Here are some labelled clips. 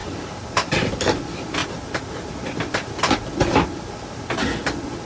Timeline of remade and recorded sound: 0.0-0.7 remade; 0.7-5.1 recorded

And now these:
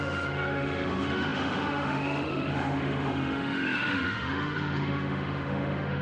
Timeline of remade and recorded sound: 0.0-6.0 remade

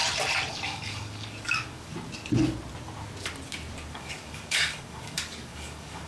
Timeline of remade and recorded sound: 0.0-0.5 recorded; 0.5-1.9 remade; 1.9-3.9 recorded; 3.9-6.1 remade

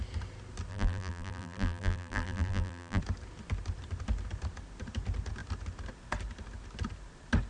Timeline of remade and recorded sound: 0.0-0.7 recorded; 0.7-3.0 remade; 3.0-7.5 recorded

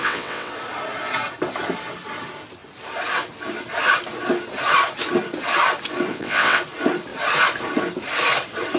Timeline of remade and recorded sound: 0.0-0.5 remade; 0.5-6.1 recorded; 6.1-6.6 remade; 6.6-8.8 recorded

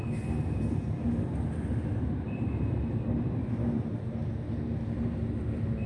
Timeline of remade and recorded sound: 0.0-5.9 recorded